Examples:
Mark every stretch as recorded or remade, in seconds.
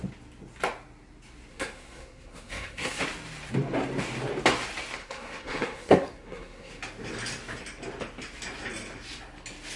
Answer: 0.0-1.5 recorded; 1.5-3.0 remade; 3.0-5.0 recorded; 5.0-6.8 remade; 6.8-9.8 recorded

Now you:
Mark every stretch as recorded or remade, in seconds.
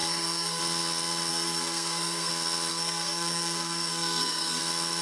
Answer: 0.0-0.6 remade; 0.6-1.3 recorded; 1.3-2.3 remade; 2.3-2.7 recorded; 2.7-4.6 remade; 4.6-5.0 recorded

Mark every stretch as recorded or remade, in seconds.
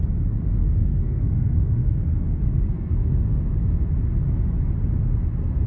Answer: 0.0-0.6 recorded; 0.6-3.4 remade; 3.4-5.7 recorded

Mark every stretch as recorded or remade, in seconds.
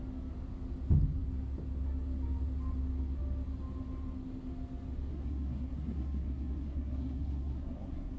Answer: 0.0-5.1 recorded; 5.1-8.2 remade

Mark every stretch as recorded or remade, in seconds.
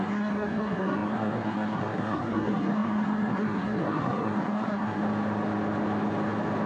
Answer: 0.0-5.0 remade; 5.0-6.7 recorded